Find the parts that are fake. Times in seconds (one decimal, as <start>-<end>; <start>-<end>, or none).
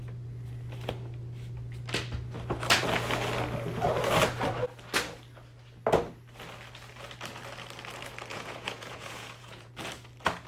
8.3-9.7